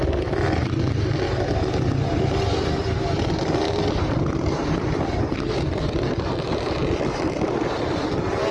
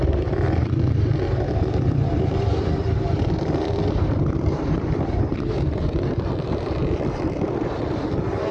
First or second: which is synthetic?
second